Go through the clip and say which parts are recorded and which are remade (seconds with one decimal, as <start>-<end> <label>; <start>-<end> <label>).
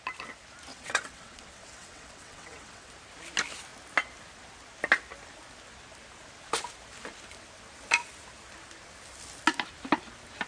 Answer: 0.0-0.7 recorded; 0.7-2.9 remade; 2.9-10.5 recorded